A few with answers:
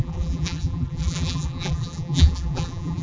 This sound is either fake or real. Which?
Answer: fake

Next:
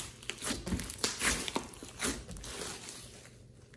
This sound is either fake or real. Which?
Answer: real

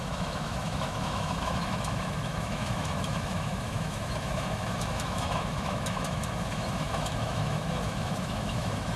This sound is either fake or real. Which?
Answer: fake